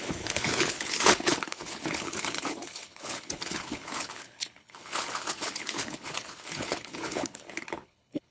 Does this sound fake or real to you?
fake